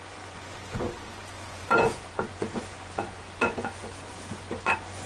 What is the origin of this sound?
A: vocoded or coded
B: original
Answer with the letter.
A